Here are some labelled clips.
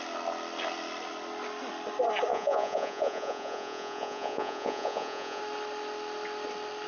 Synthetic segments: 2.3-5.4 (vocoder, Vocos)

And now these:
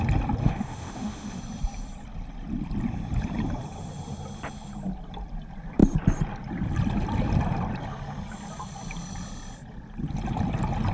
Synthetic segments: 0.4-1.4 (autoencoder, DAC-VAE)